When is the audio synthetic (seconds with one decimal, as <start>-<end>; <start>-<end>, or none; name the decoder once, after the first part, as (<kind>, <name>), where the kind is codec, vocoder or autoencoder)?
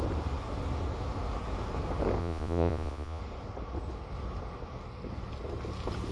2.2-3.2 (vocoder, Vocos)